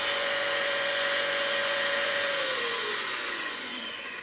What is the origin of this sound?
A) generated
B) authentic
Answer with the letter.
A